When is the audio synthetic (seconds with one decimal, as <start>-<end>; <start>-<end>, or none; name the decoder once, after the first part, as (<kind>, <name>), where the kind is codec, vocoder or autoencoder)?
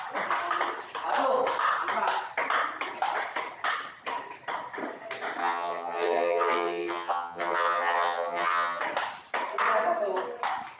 5.4-8.8 (vocoder, HiFi-GAN)